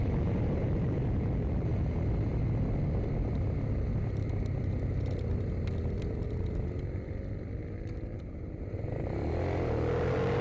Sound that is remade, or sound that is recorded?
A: recorded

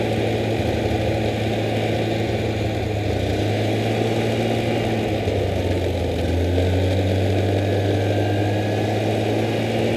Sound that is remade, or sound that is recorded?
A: recorded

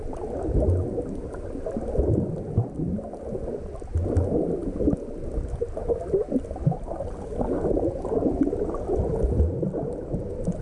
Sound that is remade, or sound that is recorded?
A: recorded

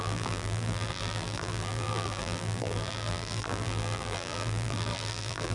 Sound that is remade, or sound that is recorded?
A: remade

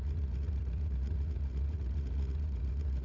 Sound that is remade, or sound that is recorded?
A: remade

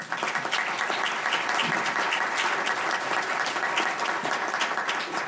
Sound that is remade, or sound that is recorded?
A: recorded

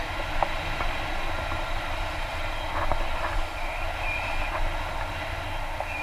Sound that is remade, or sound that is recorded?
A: recorded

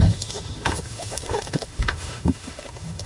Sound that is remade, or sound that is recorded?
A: remade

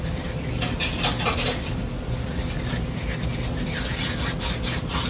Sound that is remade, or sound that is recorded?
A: recorded